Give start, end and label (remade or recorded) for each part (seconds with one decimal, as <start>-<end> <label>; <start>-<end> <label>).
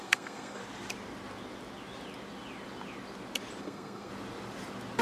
0.0-0.6 remade; 0.6-3.6 recorded; 3.6-4.1 remade; 4.1-5.0 recorded